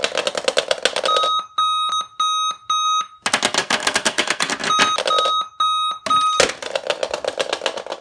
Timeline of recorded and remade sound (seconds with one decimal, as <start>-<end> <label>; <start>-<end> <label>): 0.0-3.6 recorded; 3.6-4.5 remade; 4.5-8.0 recorded